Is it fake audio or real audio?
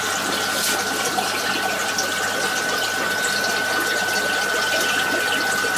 real